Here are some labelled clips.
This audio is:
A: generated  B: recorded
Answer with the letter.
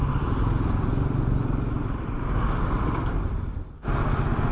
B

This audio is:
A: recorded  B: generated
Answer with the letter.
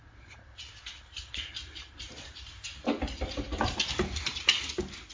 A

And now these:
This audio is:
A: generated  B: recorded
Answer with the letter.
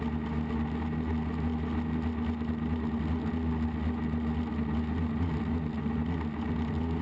B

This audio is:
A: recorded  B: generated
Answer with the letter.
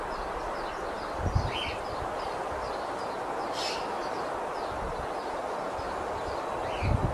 A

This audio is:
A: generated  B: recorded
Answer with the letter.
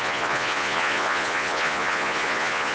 A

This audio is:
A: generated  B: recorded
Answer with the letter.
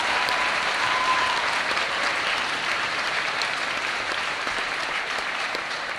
A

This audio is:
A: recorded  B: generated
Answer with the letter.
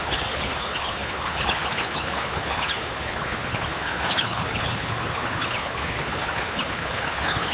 B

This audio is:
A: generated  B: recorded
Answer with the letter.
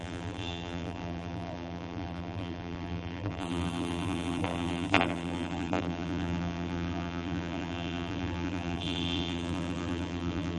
A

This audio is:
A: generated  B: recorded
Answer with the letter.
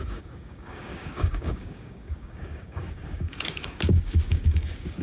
A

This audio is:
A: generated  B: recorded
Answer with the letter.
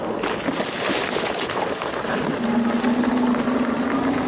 B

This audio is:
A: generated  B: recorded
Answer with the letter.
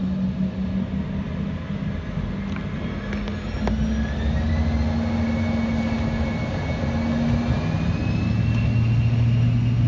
B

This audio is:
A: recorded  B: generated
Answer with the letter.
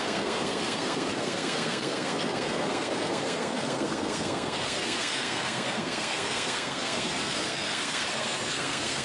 B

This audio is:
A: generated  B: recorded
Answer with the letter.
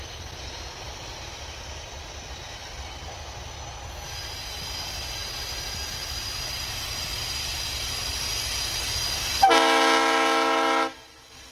B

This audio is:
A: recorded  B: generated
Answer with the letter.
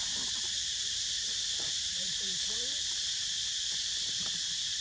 B